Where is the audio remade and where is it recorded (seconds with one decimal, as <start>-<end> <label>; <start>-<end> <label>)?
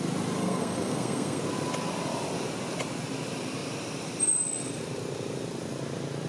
0.0-0.4 recorded; 0.4-1.4 remade; 1.4-6.3 recorded